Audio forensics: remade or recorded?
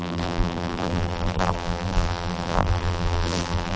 remade